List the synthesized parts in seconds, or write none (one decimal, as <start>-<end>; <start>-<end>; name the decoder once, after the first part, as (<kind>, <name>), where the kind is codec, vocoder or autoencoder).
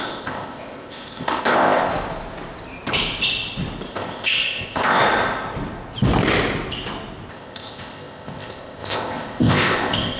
0.0-1.9 (codec, ZipCodec); 3.9-5.0; 7.3-10.2